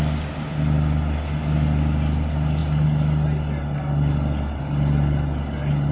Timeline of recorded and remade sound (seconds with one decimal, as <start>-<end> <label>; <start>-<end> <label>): 0.0-5.9 recorded